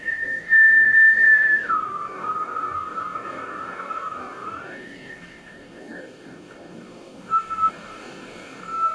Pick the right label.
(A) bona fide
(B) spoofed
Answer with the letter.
B